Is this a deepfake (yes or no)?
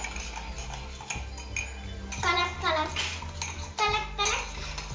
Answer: no